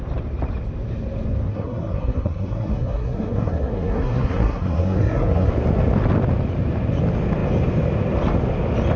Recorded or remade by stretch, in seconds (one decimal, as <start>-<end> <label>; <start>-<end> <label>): 0.0-1.5 recorded; 1.5-5.5 remade; 5.5-9.0 recorded